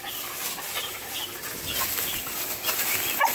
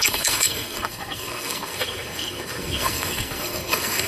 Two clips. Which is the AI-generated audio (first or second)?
second